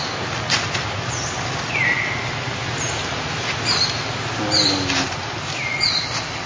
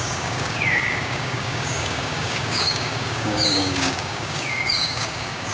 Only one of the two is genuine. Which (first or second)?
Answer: first